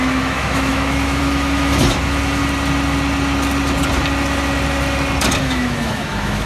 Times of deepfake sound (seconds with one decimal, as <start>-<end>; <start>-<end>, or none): 0.0-2.4; 5.4-6.5